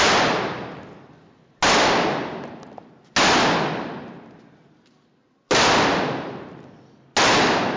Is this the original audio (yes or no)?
yes